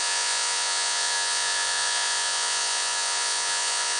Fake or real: fake